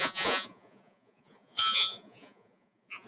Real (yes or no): no